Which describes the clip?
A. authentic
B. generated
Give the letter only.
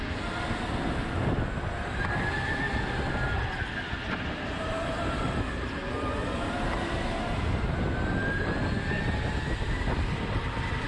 A